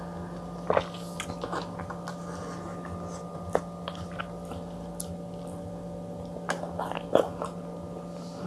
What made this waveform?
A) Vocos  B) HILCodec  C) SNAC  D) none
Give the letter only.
D